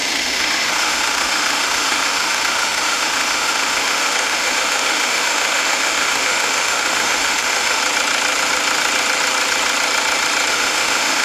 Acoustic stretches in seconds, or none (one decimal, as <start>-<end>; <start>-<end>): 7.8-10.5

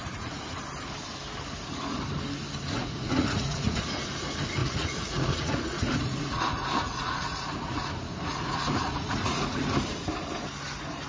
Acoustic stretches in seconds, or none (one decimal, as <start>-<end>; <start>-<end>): 0.6-2.7; 3.8-4.6; 9.6-11.1

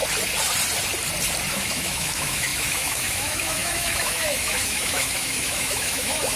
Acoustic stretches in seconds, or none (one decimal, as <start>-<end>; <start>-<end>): 0.0-1.5

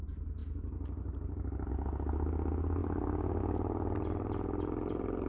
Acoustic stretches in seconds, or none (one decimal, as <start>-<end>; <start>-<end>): 0.0-5.3

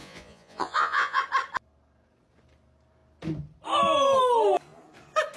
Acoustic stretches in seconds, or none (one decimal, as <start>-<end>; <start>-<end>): 1.2-5.4